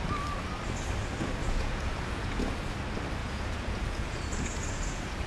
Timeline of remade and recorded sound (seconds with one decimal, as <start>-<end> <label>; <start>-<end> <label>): 0.0-1.4 recorded; 1.4-2.5 remade; 2.5-3.2 recorded; 3.2-5.3 remade